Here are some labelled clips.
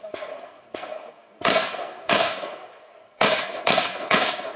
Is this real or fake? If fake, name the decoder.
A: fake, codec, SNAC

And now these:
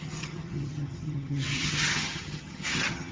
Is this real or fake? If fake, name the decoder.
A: fake, vocoder, HiFi-GAN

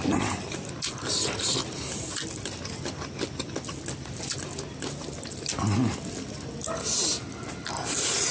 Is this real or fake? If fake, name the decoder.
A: real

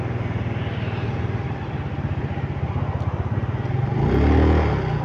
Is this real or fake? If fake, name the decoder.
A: real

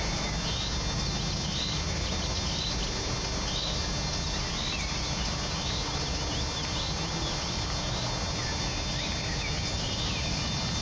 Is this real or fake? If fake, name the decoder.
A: real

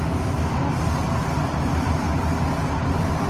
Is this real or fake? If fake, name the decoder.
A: real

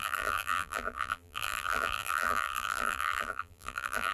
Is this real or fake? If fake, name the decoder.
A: fake, vocoder, BigVGAN v2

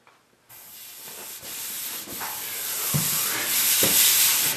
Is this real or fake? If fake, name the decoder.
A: real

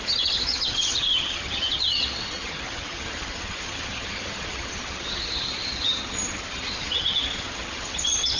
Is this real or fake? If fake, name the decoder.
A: fake, vocoder, HiFi-GAN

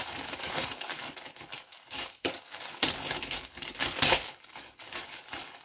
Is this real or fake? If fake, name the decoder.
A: fake, codec, DAC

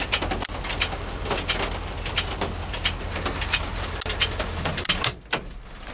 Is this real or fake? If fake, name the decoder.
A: real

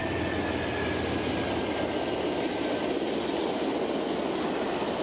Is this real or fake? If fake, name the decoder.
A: real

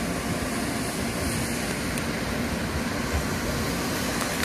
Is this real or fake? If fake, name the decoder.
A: real